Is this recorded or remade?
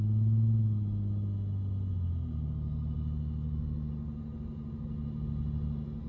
recorded